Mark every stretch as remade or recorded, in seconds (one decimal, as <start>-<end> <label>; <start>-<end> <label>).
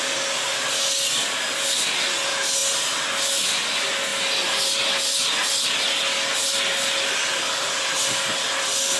0.0-9.0 recorded